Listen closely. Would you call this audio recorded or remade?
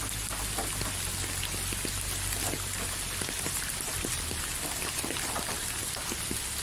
recorded